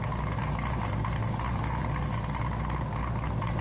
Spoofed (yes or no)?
no